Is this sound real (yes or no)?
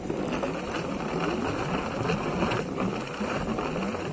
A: yes